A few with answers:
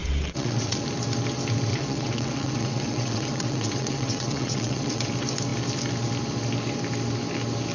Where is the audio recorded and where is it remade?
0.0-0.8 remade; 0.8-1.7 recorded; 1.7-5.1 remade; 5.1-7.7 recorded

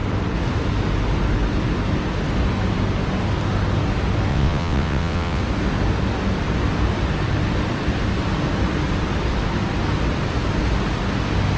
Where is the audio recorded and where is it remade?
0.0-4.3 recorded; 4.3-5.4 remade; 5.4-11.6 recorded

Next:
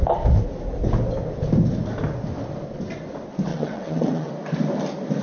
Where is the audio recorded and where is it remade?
0.0-3.5 recorded; 3.5-4.3 remade; 4.3-5.2 recorded